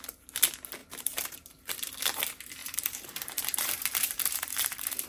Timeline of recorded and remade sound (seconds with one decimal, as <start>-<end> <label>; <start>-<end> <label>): 0.0-0.8 recorded; 0.8-1.9 remade; 1.9-2.6 recorded; 2.6-5.1 remade